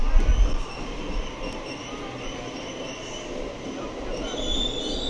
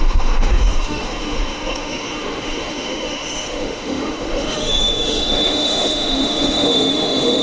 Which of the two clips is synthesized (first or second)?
second